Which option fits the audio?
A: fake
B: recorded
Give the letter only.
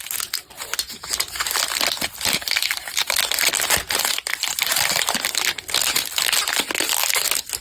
B